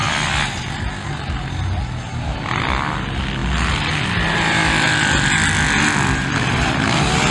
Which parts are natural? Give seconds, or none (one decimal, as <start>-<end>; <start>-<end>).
0.0-7.3